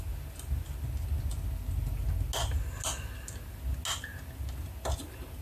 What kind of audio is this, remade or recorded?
recorded